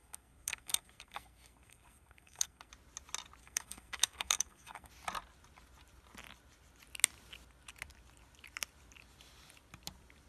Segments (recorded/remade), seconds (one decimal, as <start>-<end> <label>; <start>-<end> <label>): 0.0-2.7 remade; 2.7-3.4 recorded; 3.4-4.9 remade; 4.9-10.3 recorded